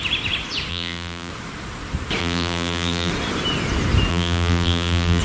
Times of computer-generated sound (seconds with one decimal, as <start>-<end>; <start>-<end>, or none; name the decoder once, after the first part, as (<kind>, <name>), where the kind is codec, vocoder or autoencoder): 0.7-1.3 (vocoder, BigVGAN v2); 2.2-3.1; 4.1-5.2

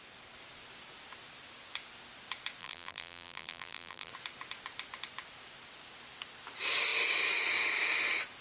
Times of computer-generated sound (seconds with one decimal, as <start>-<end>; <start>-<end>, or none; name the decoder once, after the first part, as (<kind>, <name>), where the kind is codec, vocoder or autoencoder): 2.6-4.1 (vocoder, BigVGAN v2)

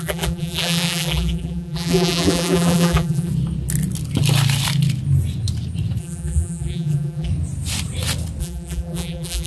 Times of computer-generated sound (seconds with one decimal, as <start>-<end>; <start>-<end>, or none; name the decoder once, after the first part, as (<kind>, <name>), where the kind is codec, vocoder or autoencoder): 0.0-3.3 (vocoder, BigVGAN v2); 6.0-7.3; 8.4-9.5

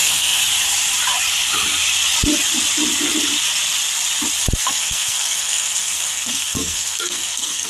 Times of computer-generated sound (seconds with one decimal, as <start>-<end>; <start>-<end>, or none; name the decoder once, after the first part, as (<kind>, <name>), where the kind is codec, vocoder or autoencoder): 0.0-0.4 (codec, SNAC); 4.6-7.7

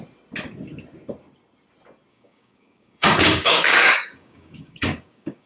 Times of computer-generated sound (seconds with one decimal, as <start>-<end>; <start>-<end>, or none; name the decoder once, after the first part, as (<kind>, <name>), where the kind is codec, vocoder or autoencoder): 2.1-5.5 (codec, DAC)

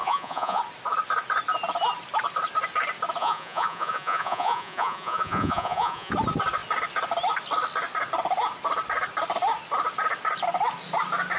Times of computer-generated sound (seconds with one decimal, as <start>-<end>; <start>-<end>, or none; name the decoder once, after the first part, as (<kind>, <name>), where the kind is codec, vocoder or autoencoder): 0.0-0.6 (vocoder, Vocos); 3.2-6.1

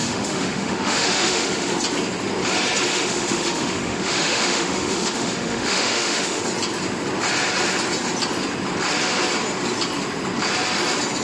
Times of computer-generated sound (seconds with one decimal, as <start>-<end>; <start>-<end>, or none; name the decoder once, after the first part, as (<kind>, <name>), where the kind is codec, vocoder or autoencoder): 0.0-1.7 (autoencoder, DAC-VAE); 2.9-6.4

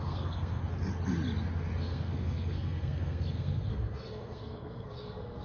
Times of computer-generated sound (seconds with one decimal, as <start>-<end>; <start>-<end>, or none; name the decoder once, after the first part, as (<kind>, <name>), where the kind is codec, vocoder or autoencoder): 0.0-0.6 (codec, SNAC); 1.8-5.4